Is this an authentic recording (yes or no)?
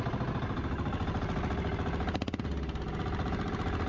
yes